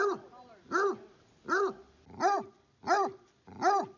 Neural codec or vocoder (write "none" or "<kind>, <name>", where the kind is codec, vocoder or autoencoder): none